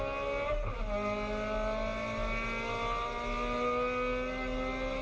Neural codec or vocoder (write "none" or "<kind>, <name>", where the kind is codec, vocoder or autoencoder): none